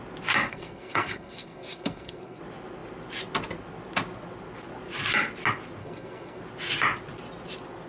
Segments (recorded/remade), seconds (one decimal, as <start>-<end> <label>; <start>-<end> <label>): 0.0-0.5 recorded; 0.5-2.4 remade; 2.4-5.8 recorded; 5.8-6.4 remade; 6.4-7.9 recorded